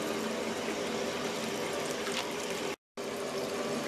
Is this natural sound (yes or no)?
yes